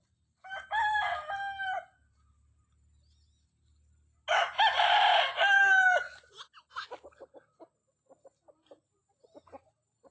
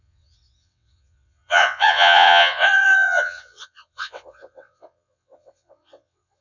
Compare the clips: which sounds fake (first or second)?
second